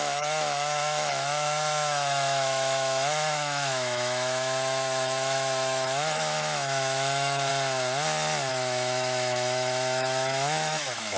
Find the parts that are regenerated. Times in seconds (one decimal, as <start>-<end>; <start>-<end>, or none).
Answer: 0.0-7.5; 8.5-11.2